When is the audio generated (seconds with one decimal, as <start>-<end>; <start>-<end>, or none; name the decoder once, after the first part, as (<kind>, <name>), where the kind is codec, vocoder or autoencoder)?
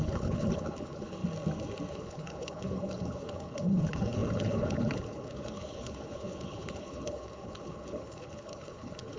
0.0-1.2 (codec, HILCodec); 1.9-9.2